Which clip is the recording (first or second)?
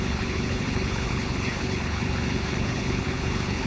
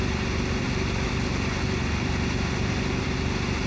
second